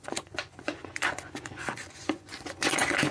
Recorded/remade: remade